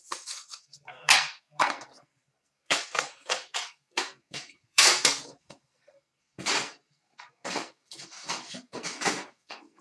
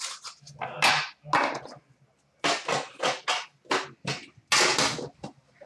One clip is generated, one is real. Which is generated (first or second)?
first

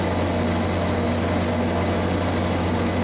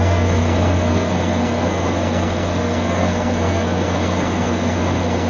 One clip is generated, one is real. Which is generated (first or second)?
second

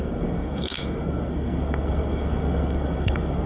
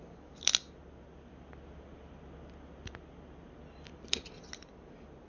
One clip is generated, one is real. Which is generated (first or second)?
first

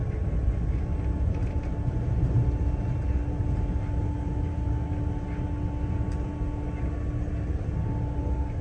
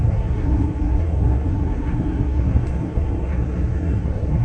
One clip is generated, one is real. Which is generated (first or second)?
second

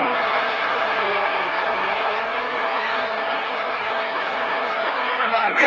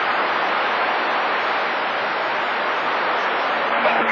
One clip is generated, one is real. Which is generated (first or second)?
first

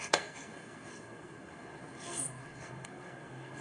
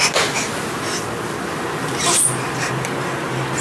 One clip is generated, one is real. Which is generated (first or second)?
first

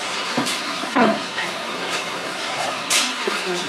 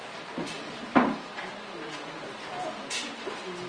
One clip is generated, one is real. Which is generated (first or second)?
first